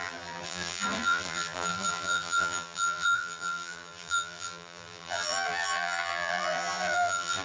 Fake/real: fake